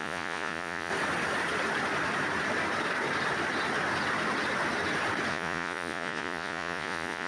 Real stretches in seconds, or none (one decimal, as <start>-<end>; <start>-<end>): 0.9-5.3

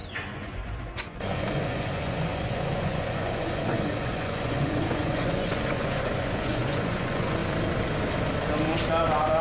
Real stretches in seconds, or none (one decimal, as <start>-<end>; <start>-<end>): 7.4-9.4

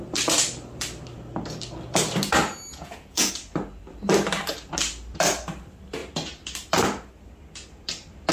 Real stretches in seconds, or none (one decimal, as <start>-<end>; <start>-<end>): 0.0-2.7; 3.3-8.3

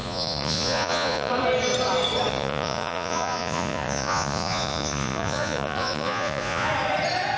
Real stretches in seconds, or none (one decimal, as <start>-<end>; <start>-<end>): 1.3-2.3; 6.7-7.4

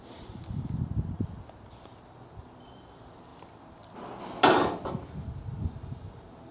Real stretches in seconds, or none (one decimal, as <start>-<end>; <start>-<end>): 0.0-6.5